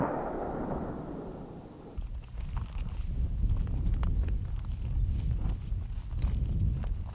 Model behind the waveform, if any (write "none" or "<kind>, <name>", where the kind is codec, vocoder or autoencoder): none